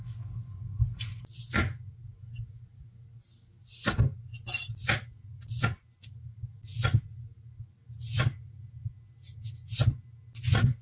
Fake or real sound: real